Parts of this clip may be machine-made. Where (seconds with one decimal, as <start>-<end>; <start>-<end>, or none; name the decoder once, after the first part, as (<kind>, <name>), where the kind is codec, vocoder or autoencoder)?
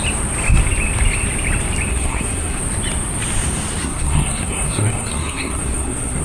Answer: 1.9-2.6 (codec, SNAC); 3.8-6.2